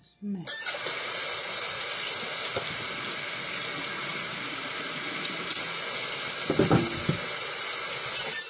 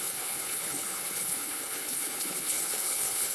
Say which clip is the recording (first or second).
first